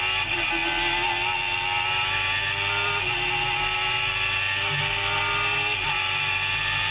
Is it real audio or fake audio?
real